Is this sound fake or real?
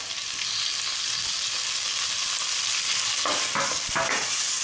real